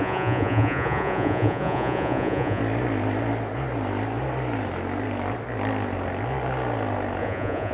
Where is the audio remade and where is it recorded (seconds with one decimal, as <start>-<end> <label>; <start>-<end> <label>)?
0.0-2.6 remade; 2.6-7.2 recorded; 7.2-7.7 remade